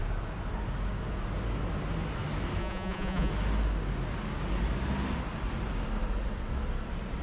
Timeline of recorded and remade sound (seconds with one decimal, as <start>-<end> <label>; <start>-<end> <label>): 0.0-2.6 recorded; 2.6-3.3 remade; 3.3-7.2 recorded